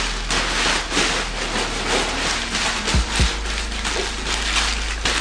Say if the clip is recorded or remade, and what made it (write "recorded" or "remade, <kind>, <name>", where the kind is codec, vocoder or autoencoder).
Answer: recorded